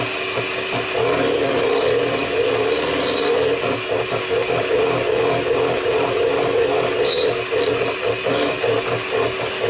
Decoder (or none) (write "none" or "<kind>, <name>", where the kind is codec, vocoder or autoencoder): none